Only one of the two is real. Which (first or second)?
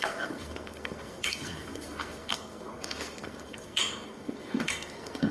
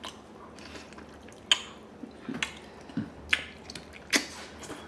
second